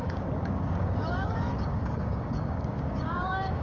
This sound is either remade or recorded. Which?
remade